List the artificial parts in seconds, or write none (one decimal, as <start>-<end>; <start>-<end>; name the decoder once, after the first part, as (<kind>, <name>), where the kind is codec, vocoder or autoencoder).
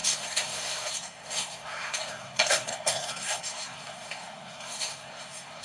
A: 0.0-5.6 (codec, SNAC)